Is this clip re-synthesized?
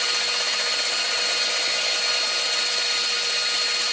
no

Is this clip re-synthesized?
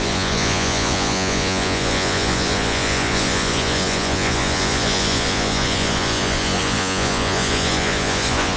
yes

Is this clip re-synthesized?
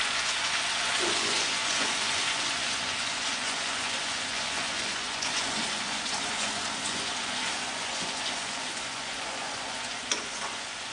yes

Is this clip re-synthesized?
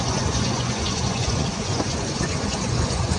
yes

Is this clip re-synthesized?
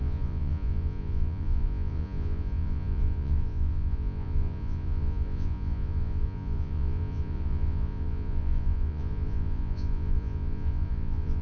yes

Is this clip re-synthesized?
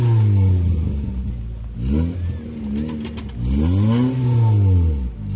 no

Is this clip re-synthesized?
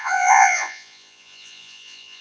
yes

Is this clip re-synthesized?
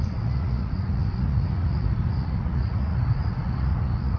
yes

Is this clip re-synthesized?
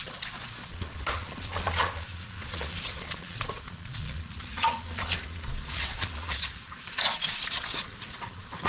yes